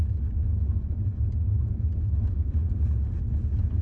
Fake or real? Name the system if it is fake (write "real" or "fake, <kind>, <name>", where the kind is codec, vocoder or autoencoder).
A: real